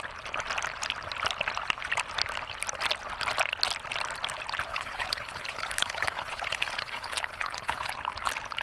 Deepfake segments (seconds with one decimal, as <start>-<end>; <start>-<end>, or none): 4.7-7.9